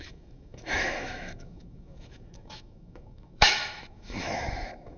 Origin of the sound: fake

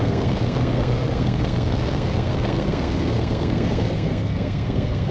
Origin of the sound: fake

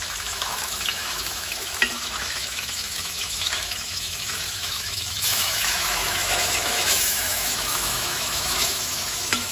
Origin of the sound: fake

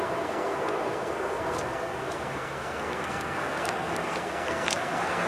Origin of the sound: fake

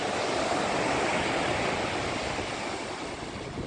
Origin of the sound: real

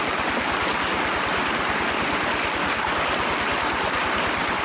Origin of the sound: real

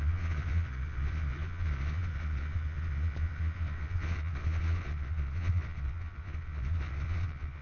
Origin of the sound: fake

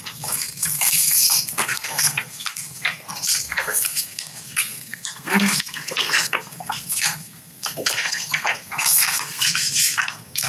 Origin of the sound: fake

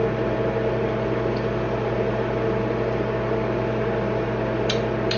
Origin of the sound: real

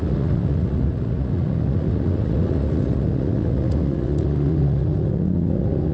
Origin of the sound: fake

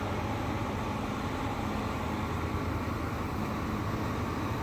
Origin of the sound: real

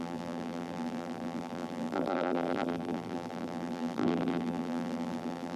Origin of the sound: fake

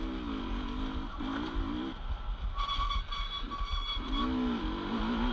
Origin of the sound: real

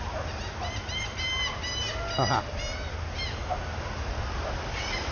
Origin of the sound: real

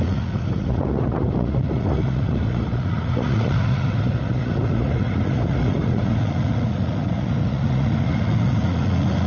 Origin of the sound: fake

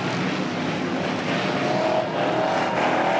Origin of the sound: real